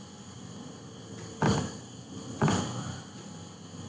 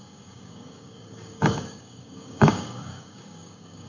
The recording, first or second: first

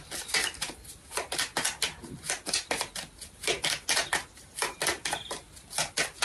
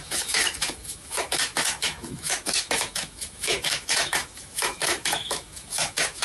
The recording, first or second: first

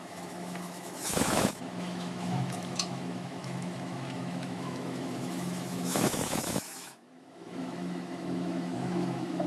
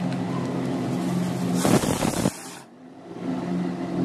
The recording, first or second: second